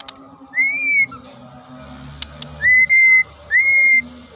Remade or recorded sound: recorded